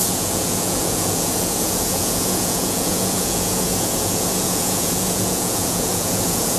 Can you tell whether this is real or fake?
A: fake